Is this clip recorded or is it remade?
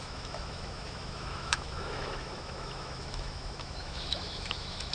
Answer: remade